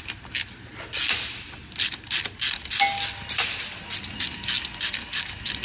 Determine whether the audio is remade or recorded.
recorded